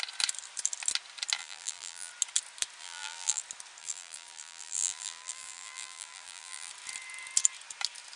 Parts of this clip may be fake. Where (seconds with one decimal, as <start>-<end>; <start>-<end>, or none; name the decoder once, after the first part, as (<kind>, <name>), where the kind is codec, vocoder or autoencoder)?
1.4-2.1 (vocoder, BigVGAN v2); 2.8-3.4; 3.8-6.7